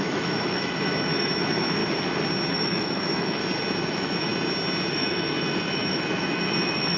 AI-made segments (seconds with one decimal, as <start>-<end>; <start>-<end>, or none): 0.0-1.8; 2.5-3.4; 3.9-4.3; 4.9-7.0